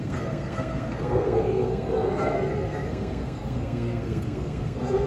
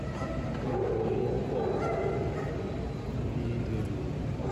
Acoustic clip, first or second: second